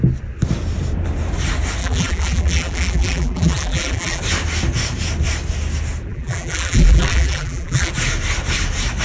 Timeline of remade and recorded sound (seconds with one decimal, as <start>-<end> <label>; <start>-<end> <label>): 0.0-1.8 recorded; 1.8-4.2 remade; 4.2-6.1 recorded; 6.1-7.9 remade; 7.9-9.0 recorded